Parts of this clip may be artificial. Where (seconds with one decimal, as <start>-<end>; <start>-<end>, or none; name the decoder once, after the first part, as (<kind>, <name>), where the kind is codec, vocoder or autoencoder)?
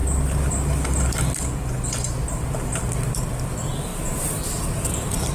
none